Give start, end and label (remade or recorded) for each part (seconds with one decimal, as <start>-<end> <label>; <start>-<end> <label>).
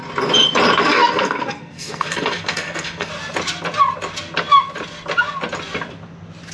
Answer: 0.0-0.8 recorded; 0.8-3.1 remade; 3.1-6.5 recorded